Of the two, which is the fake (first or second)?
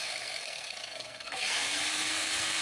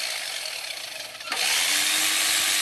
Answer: first